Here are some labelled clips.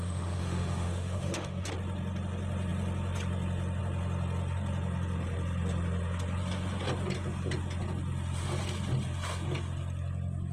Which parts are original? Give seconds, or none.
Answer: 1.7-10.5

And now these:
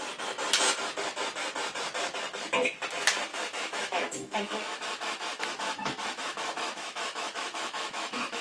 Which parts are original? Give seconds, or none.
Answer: 0.0-3.3

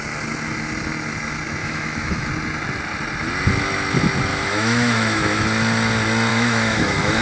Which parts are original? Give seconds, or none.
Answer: 0.0-1.6; 2.3-4.3; 5.4-6.3

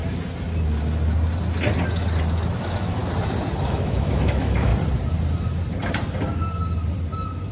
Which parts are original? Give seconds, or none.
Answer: 0.0-2.6; 3.0-3.7; 4.7-7.5

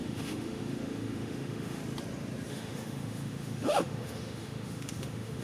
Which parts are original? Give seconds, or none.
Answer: 1.8-2.5

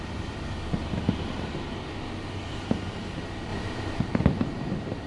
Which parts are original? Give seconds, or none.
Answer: 0.0-5.1